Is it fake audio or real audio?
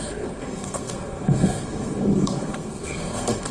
fake